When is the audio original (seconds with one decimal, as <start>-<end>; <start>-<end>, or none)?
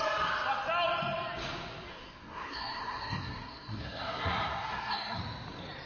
0.0-1.9; 5.2-5.9